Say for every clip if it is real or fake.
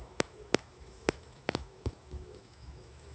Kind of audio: fake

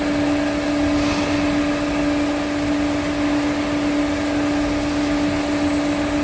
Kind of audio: real